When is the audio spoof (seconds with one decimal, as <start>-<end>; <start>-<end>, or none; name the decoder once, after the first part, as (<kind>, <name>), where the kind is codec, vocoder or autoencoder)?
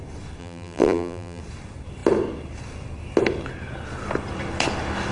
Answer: 0.4-1.4 (vocoder, BigVGAN v2)